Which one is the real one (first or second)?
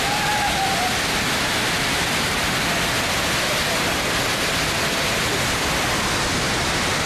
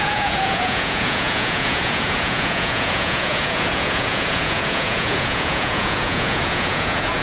first